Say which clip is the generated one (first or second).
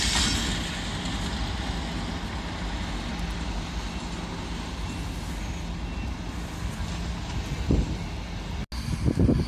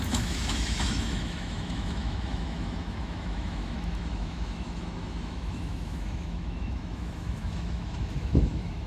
second